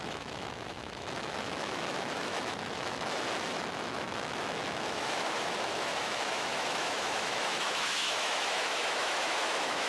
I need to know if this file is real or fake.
fake